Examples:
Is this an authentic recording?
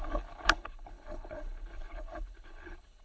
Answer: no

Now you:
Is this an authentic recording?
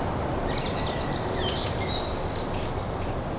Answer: yes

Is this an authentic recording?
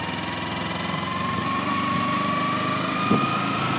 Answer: yes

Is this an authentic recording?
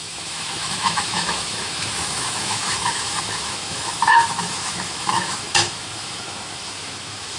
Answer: no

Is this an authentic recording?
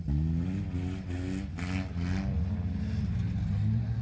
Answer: yes